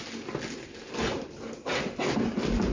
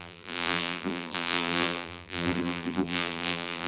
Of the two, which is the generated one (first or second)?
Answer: second